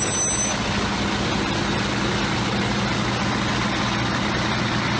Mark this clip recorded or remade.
recorded